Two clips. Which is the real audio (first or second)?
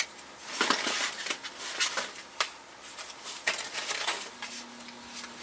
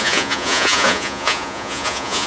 first